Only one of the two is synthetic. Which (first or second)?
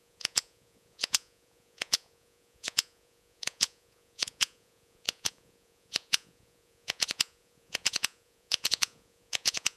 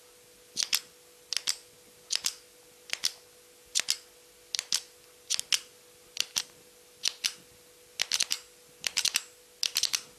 first